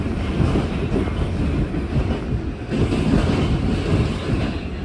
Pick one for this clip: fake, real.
real